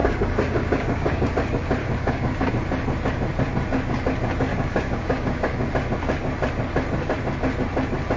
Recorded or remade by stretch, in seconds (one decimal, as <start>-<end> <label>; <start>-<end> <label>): 0.0-1.3 remade; 1.3-1.8 recorded; 1.8-2.5 remade; 2.5-4.5 recorded; 4.5-5.7 remade; 5.7-8.2 recorded